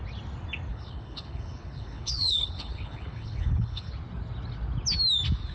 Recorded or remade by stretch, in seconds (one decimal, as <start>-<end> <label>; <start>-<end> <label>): 0.0-0.7 recorded; 0.7-3.9 remade; 3.9-5.5 recorded